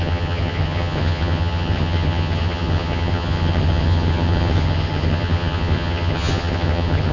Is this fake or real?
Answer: fake